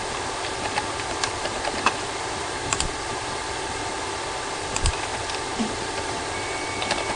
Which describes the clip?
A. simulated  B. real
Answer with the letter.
A